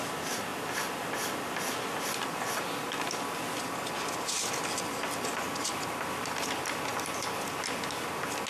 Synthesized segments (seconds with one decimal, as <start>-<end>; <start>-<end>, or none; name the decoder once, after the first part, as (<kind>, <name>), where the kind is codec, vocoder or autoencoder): none